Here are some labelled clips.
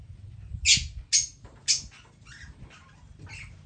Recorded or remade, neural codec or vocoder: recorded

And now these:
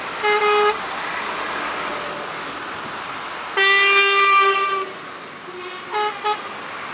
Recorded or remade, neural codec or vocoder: recorded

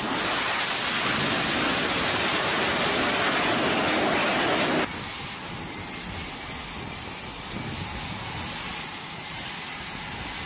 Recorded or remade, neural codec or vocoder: recorded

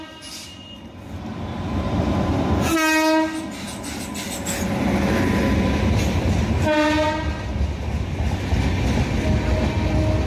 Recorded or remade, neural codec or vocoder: recorded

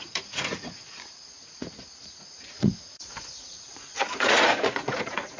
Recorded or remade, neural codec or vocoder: remade, vocoder, Vocos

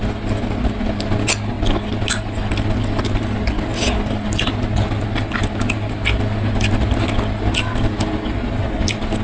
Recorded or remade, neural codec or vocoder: recorded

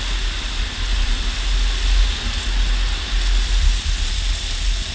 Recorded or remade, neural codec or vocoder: recorded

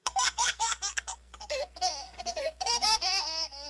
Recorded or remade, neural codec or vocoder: remade, codec, SNAC